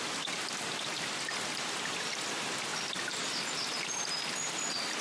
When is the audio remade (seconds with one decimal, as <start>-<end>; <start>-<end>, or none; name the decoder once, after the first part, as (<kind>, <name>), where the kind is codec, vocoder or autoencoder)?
none